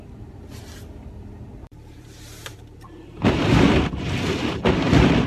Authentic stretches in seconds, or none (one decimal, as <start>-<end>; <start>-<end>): 1.0-1.5